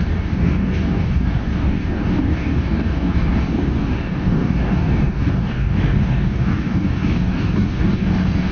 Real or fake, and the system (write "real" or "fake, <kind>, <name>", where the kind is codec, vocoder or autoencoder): fake, codec, DAC